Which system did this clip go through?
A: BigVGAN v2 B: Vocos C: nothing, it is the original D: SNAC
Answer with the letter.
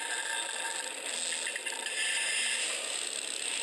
C